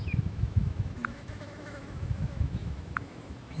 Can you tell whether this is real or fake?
fake